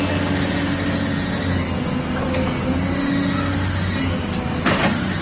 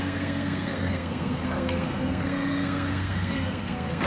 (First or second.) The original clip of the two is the first